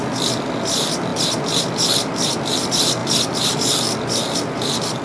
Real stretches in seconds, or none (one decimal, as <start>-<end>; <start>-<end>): 0.0-5.0